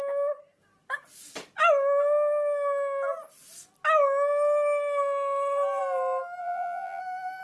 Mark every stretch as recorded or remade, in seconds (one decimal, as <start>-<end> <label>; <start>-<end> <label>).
0.0-6.4 recorded; 6.4-7.0 remade; 7.0-7.4 recorded